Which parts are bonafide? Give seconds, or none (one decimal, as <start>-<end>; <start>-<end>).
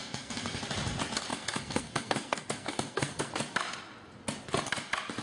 0.6-1.3; 3.3-5.2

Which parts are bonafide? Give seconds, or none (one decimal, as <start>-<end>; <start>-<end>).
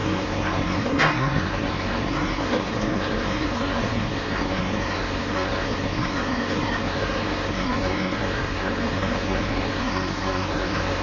none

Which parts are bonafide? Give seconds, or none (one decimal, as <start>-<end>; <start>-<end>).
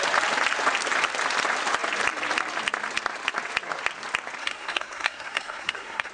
0.0-4.4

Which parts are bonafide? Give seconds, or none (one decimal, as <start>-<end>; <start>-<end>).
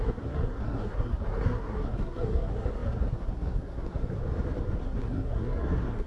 4.2-4.8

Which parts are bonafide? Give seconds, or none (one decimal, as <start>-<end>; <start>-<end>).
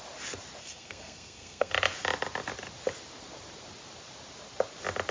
0.0-0.6; 1.7-5.1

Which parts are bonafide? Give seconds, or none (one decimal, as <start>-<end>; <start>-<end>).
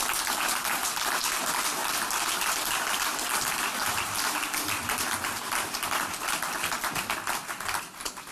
0.0-8.3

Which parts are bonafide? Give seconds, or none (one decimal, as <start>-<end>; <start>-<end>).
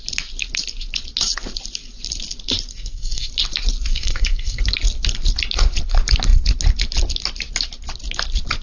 0.0-2.7; 3.3-3.9; 4.6-8.6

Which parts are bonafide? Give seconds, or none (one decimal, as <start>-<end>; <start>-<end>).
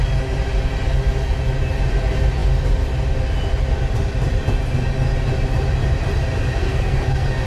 0.0-6.6